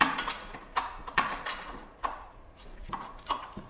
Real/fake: fake